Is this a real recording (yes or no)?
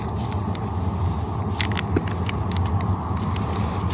yes